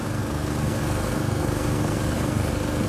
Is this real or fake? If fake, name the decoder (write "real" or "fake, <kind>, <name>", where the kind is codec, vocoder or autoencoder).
fake, codec, SNAC